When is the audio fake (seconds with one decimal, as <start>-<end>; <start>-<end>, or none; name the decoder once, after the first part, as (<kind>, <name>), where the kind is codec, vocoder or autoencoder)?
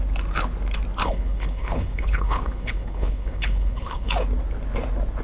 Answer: 1.0-4.1 (codec, HILCodec)